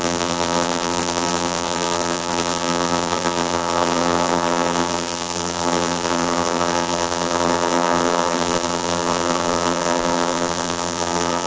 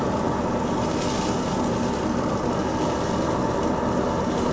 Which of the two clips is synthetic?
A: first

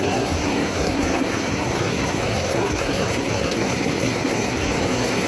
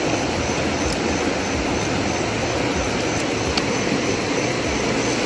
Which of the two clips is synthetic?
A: first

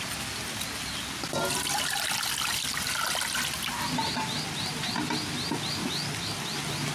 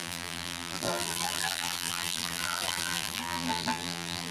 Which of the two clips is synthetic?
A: second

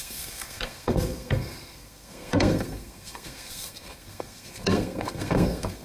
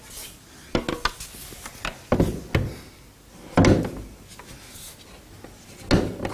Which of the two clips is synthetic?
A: first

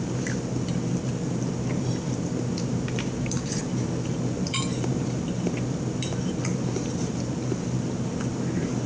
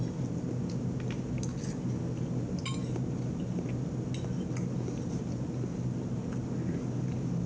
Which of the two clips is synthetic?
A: first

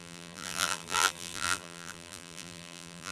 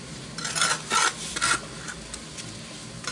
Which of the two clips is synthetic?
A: first